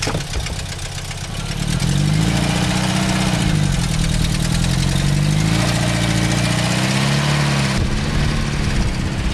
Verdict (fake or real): real